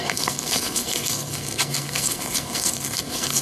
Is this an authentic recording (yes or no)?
no